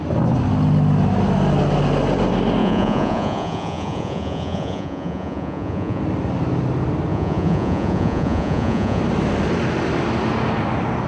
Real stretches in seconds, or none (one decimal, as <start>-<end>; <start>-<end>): 0.0-2.6; 6.0-7.1; 9.0-11.1